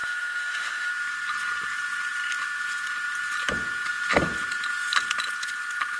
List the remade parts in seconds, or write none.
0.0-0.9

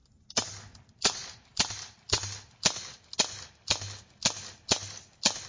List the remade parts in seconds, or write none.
none

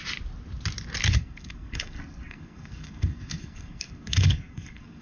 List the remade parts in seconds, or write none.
1.1-5.0

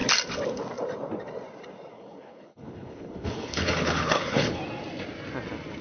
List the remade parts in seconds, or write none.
1.9-4.6

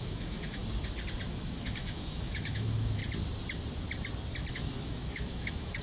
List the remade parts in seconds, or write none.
0.0-0.6; 1.3-3.0; 4.5-5.8

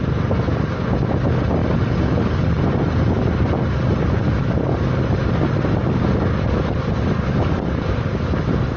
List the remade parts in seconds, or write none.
none

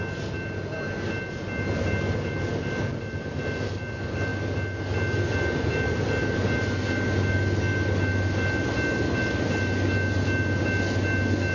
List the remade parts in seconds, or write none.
none